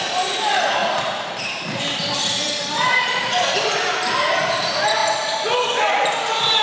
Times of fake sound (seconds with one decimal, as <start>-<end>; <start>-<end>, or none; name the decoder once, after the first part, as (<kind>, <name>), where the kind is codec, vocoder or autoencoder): 0.0-0.8 (vocoder, BigVGAN v2); 2.1-6.6